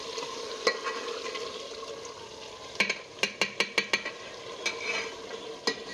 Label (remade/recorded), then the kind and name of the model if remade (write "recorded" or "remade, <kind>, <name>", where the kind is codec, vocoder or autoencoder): recorded